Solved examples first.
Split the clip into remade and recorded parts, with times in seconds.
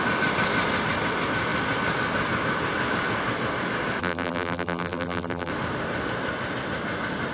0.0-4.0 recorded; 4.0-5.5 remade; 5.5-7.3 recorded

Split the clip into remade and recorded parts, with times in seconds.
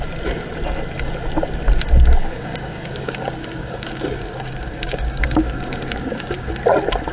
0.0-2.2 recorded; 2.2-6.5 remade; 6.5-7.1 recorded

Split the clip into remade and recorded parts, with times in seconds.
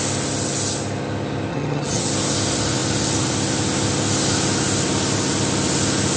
0.0-1.5 recorded; 1.5-2.1 remade; 2.1-6.2 recorded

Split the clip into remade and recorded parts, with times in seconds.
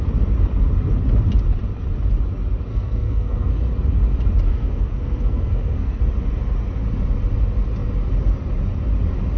0.0-2.7 recorded; 2.7-3.5 remade; 3.5-4.5 recorded; 4.5-6.0 remade; 6.0-9.4 recorded